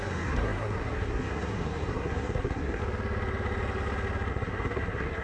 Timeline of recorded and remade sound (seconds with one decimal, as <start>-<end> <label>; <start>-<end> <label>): 0.0-2.8 remade; 2.8-4.3 recorded; 4.3-5.2 remade